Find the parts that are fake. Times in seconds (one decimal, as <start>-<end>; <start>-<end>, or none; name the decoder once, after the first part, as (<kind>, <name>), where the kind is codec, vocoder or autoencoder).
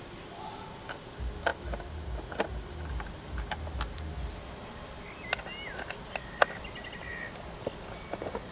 none